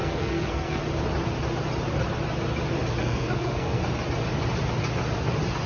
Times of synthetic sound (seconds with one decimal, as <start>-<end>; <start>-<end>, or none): 0.0-0.8; 3.0-3.8